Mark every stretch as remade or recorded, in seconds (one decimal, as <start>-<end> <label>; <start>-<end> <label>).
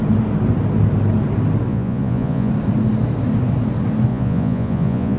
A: 0.0-1.7 recorded; 1.7-2.5 remade; 2.5-4.1 recorded; 4.1-5.2 remade